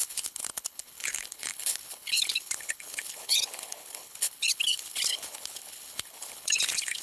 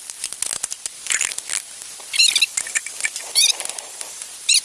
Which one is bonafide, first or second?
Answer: second